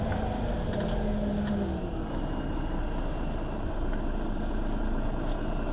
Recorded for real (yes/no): yes